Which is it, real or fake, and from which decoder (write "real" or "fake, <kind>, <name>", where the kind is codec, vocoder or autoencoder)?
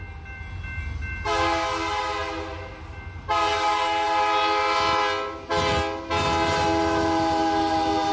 real